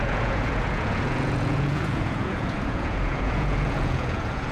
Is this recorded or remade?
remade